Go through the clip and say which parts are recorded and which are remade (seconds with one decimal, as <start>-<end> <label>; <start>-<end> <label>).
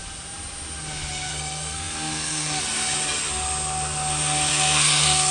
0.0-1.3 recorded; 1.3-2.6 remade; 2.6-4.5 recorded; 4.5-5.3 remade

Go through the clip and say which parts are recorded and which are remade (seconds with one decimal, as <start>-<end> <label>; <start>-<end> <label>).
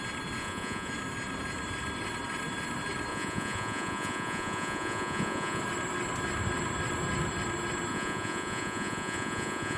0.0-0.4 recorded; 0.4-0.9 remade; 0.9-3.1 recorded; 3.1-5.6 remade; 5.6-7.9 recorded; 7.9-9.8 remade